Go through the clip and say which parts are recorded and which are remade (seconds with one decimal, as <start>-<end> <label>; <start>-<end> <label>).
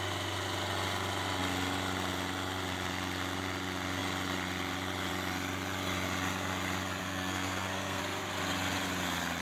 0.0-7.0 recorded; 7.0-8.0 remade; 8.0-9.4 recorded